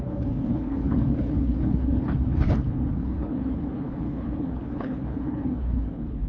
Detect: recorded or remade remade